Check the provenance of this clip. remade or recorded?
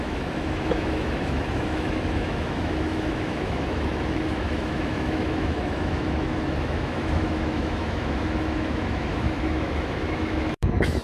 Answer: remade